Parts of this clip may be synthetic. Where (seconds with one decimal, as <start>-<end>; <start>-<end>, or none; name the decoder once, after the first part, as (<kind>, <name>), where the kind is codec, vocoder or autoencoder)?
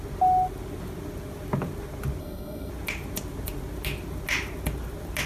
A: 2.2-2.7 (codec, SNAC)